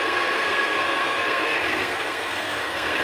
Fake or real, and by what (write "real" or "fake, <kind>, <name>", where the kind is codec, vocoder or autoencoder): fake, codec, SNAC